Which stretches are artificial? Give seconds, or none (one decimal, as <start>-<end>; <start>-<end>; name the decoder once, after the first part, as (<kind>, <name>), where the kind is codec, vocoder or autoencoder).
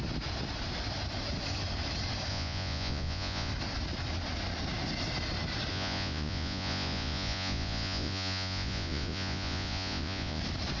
2.3-3.5 (vocoder, Vocos); 5.7-10.4